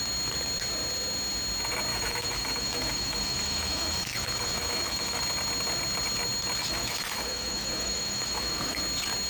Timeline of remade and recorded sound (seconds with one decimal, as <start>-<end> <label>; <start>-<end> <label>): 0.0-1.9 recorded; 1.9-5.2 remade; 5.2-6.6 recorded; 6.6-8.8 remade; 8.8-9.3 recorded